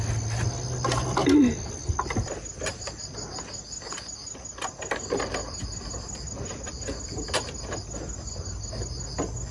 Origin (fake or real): real